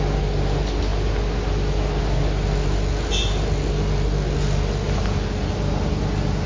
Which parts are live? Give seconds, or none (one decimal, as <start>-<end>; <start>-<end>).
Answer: 0.0-6.5